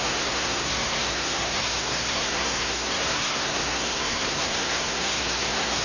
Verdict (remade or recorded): remade